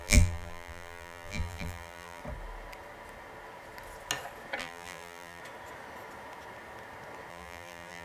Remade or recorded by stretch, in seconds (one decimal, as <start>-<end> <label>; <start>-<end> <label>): 0.0-2.2 remade; 2.2-4.6 recorded; 4.6-5.4 remade; 5.4-7.3 recorded; 7.3-8.0 remade